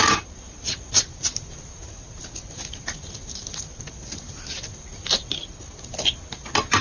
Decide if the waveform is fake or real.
real